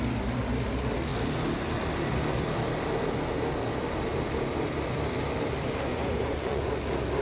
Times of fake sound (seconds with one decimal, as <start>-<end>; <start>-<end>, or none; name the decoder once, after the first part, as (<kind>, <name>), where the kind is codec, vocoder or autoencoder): 5.9-6.7 (vocoder, Vocos)